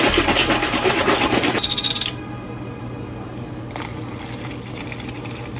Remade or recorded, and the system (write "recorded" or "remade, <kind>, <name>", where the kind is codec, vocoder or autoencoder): recorded